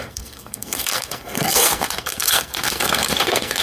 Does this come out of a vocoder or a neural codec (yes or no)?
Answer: yes